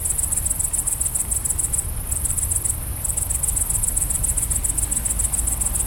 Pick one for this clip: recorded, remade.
recorded